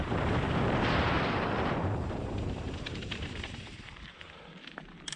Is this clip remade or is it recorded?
remade